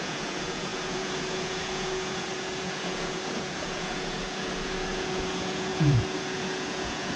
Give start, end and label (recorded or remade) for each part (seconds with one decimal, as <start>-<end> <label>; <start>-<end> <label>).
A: 0.0-7.2 remade